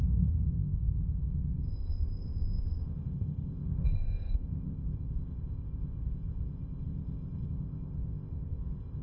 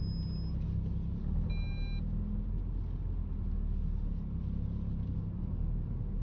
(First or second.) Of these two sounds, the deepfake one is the first